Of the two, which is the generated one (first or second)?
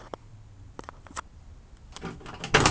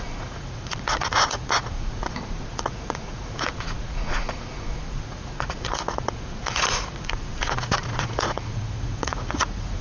second